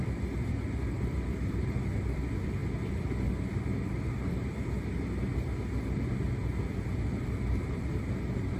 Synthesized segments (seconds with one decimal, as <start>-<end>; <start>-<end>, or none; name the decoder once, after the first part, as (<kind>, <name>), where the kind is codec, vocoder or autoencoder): 0.0-2.6 (vocoder, BigVGAN v2); 6.6-8.6

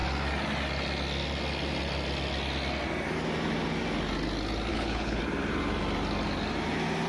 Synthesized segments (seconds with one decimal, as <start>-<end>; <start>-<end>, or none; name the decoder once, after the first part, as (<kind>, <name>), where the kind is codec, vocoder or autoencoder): 4.7-5.2 (codec, HILCodec)

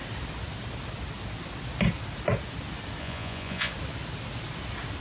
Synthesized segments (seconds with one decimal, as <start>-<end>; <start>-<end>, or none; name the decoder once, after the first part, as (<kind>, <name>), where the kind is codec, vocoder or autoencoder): 3.0-3.7 (vocoder, Vocos)

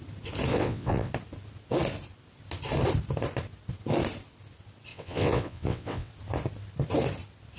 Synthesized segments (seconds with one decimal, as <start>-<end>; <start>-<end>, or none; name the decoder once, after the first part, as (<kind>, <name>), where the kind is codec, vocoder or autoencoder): 0.5-1.1 (vocoder, WaveNeXt); 4.9-6.1

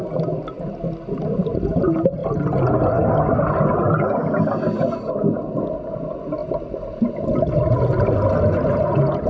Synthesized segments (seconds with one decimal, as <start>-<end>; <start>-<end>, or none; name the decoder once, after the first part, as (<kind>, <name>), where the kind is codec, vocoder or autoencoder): none

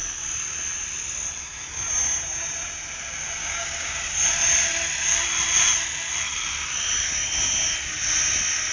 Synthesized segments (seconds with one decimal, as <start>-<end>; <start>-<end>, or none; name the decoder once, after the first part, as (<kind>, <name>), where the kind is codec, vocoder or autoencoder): 3.4-4.0 (codec, DAC)

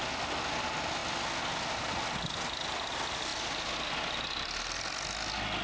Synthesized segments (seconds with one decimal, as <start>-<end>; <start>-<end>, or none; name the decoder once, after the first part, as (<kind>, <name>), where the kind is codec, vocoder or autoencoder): none